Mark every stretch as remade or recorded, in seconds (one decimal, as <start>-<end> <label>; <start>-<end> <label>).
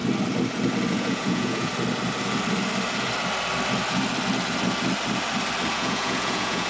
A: 0.0-0.9 recorded; 0.9-1.7 remade; 1.7-5.7 recorded; 5.7-6.7 remade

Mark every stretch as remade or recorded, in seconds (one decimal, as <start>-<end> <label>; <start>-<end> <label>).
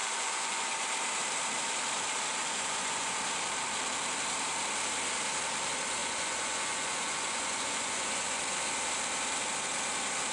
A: 0.0-0.8 remade; 0.8-2.4 recorded; 2.4-3.2 remade; 3.2-6.0 recorded; 6.0-8.4 remade; 8.4-10.3 recorded